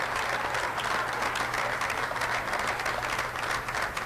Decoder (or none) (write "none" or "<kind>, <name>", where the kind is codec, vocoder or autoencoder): none